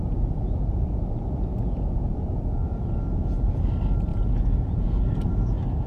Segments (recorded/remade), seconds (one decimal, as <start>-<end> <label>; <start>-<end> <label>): 0.0-1.0 remade; 1.0-1.5 recorded; 1.5-2.9 remade; 2.9-4.1 recorded; 4.1-5.2 remade; 5.2-5.9 recorded